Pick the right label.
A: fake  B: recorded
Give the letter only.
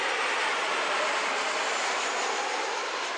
B